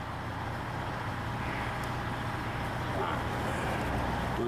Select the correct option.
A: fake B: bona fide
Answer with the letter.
B